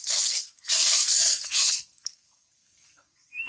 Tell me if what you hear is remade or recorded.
remade